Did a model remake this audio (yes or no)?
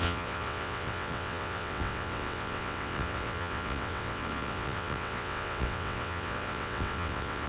yes